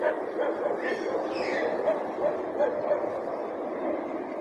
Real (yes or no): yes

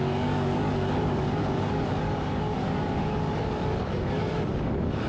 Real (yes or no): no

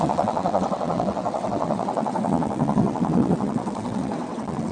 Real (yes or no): no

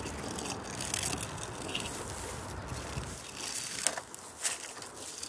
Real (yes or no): yes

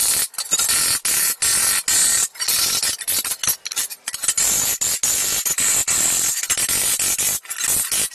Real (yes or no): yes